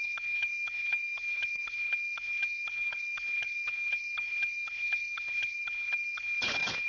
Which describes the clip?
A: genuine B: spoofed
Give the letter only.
B